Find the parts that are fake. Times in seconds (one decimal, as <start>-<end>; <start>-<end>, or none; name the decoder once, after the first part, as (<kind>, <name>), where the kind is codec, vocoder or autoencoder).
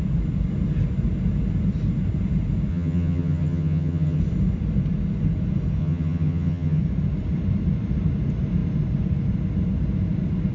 2.7-4.2 (vocoder, HiFi-GAN); 5.8-6.8